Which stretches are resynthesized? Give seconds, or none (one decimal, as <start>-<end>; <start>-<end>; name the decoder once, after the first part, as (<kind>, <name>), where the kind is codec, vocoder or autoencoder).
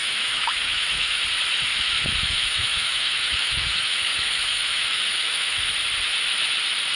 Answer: 0.0-1.2 (autoencoder, DAC-VAE); 1.7-5.6